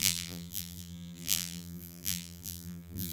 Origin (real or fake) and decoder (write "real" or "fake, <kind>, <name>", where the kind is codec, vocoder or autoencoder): fake, vocoder, BigVGAN v2